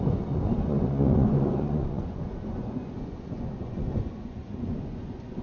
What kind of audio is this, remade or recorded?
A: remade